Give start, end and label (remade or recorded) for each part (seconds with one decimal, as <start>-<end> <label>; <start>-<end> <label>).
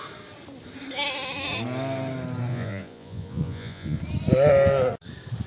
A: 0.0-2.5 recorded; 2.5-4.0 remade; 4.0-5.5 recorded